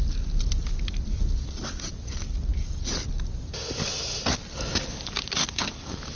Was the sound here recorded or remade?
recorded